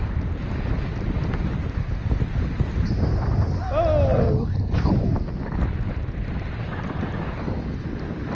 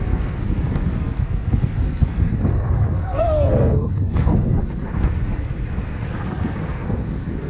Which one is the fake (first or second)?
second